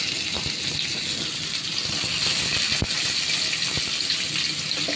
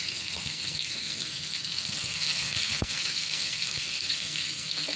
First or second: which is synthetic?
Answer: second